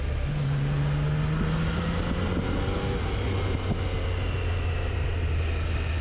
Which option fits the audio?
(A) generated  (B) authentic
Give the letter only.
B